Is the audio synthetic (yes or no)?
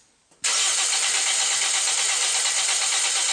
no